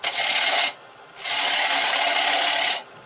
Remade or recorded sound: recorded